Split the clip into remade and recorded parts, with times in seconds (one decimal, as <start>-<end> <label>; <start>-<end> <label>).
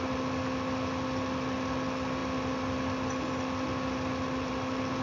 0.0-5.0 recorded